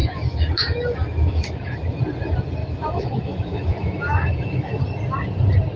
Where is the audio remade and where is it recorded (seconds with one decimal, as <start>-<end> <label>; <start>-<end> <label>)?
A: 0.0-2.0 remade; 2.0-2.6 recorded; 2.6-4.8 remade; 4.8-5.8 recorded